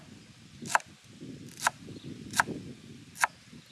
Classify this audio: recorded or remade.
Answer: recorded